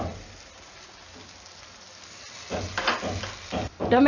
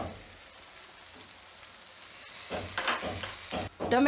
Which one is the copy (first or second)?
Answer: first